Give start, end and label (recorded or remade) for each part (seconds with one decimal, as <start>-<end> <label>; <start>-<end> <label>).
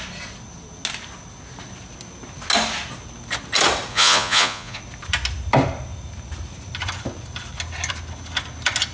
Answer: 0.0-3.9 recorded; 3.9-4.8 remade; 4.8-8.9 recorded